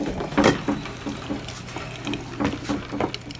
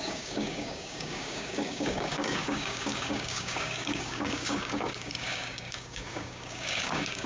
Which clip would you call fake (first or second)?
second